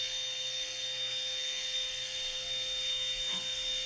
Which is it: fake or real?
fake